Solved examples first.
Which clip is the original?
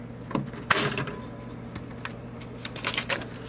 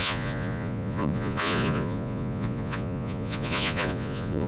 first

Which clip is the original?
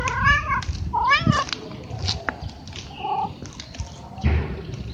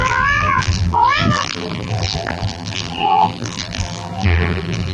first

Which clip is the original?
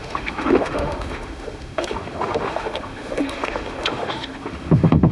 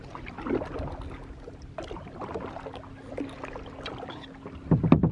second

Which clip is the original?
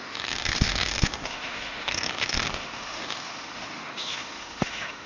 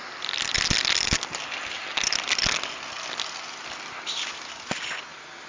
second